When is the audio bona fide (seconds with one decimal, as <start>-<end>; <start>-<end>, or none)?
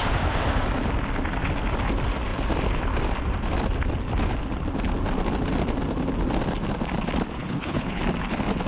0.0-7.4; 8.0-8.7